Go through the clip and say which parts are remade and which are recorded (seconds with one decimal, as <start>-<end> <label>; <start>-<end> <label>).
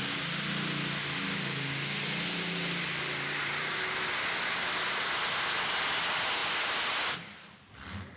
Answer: 0.0-8.2 recorded